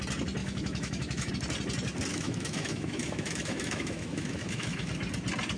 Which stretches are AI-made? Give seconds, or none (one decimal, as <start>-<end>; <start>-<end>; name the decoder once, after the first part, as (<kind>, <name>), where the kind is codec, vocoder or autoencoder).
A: 0.4-1.3 (autoencoder, DAC-VAE); 2.1-4.9